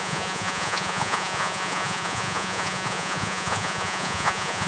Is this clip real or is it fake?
fake